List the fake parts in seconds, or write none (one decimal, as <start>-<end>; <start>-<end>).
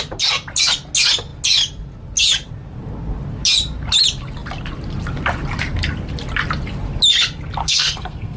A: 7.6-8.4